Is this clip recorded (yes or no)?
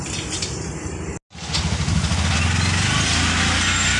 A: yes